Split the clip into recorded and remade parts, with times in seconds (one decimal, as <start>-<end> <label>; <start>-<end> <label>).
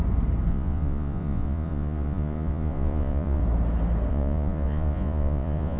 0.0-0.5 recorded; 0.5-3.4 remade; 3.4-4.1 recorded; 4.1-5.8 remade